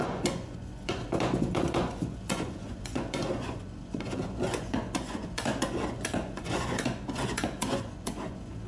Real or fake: fake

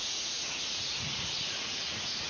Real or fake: fake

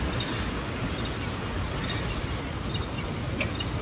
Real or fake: real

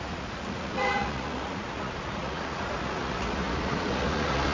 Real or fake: fake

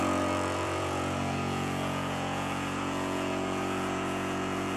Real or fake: fake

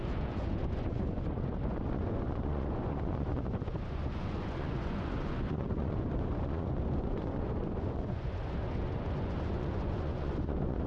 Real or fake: fake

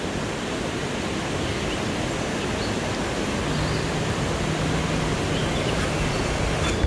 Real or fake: real